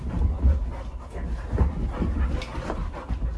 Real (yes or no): yes